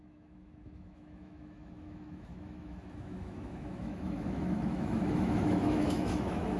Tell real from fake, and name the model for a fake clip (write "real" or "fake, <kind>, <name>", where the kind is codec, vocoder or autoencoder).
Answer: fake, autoencoder, DAC-VAE